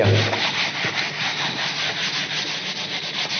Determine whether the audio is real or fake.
real